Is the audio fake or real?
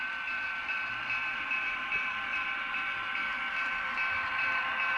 fake